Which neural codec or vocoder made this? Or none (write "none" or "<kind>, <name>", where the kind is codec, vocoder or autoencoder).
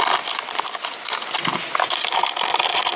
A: none